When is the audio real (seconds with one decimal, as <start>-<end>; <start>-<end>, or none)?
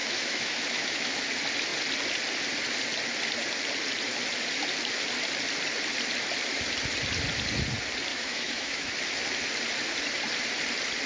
1.2-8.1; 8.9-11.1